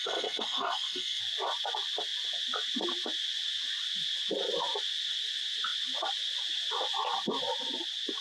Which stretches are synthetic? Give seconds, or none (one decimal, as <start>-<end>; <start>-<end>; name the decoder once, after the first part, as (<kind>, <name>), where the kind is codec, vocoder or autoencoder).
0.0-1.2 (codec, SNAC)